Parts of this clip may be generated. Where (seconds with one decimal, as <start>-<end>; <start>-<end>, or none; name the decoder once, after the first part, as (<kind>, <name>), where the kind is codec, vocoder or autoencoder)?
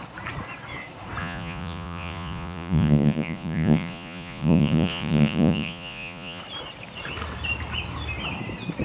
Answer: 1.2-6.4 (vocoder, Vocos)